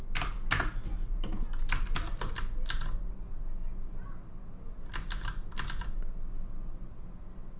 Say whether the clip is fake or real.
real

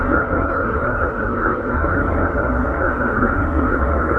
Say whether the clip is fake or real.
fake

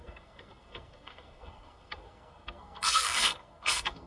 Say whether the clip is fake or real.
fake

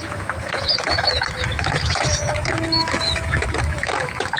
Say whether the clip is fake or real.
fake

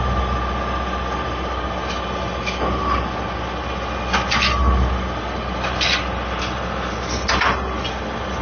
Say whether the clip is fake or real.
real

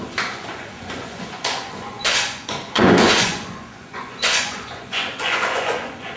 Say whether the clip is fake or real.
fake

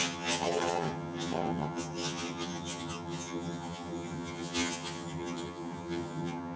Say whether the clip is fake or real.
fake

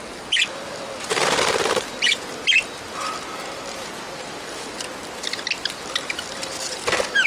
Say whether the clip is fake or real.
real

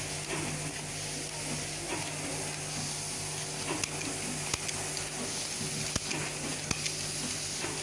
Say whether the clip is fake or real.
real